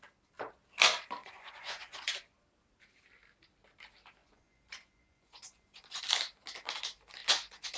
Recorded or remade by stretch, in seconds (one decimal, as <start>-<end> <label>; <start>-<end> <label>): 0.0-1.2 recorded; 1.2-2.1 remade; 2.1-4.2 recorded; 4.2-6.0 remade; 6.0-7.2 recorded; 7.2-7.8 remade

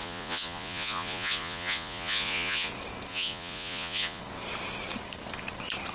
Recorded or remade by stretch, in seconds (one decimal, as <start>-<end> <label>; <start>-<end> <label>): 0.0-2.7 remade; 2.7-3.1 recorded; 3.1-4.2 remade; 4.2-5.9 recorded

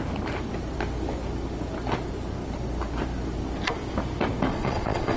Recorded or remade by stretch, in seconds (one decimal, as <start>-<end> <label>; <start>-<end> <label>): 0.0-4.5 recorded; 4.5-5.2 remade

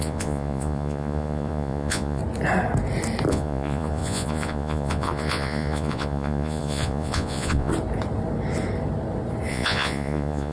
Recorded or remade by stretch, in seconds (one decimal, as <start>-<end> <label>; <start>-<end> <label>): 0.0-2.2 remade; 2.2-3.3 recorded; 3.3-7.7 remade; 7.7-9.5 recorded; 9.5-10.5 remade

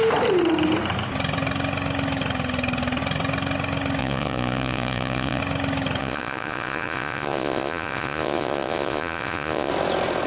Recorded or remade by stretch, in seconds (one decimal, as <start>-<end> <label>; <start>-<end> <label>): 0.0-4.0 recorded; 4.0-5.4 remade; 5.4-6.0 recorded; 6.0-9.7 remade; 9.7-10.3 recorded

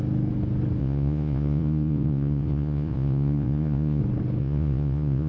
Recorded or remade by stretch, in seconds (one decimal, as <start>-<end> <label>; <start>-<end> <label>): 0.0-0.8 recorded; 0.8-4.0 remade; 4.0-4.4 recorded; 4.4-5.3 remade

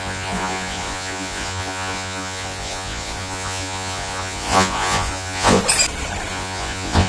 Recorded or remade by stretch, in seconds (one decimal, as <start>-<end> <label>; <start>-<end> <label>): 0.0-5.6 remade; 5.6-6.3 recorded; 6.3-7.1 remade